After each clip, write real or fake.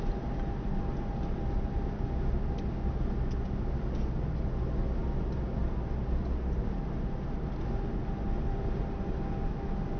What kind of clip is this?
real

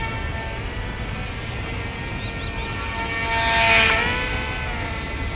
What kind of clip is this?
real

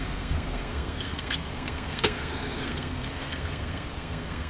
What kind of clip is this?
fake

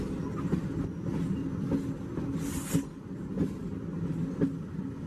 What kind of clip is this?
real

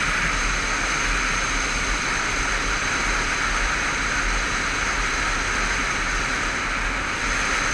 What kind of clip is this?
real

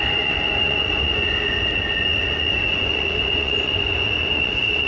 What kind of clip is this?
fake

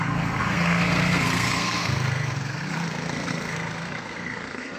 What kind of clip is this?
fake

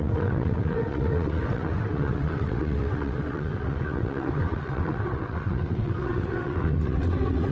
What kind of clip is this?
fake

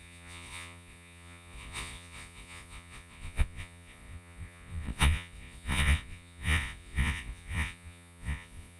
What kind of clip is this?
fake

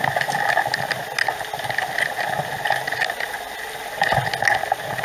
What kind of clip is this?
real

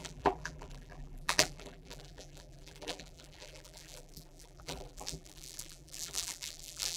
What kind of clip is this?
fake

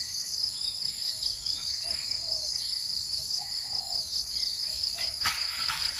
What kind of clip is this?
fake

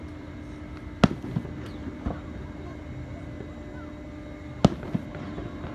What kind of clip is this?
real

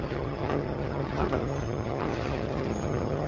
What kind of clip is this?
fake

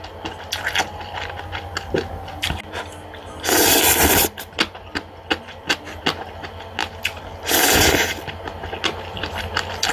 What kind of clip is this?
real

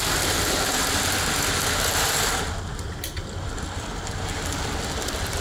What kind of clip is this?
real